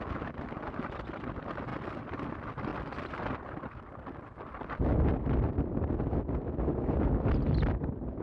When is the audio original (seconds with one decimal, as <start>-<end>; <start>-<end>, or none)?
0.0-8.2